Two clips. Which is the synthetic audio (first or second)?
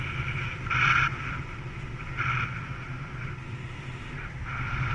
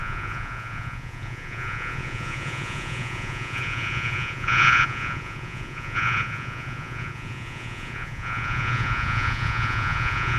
second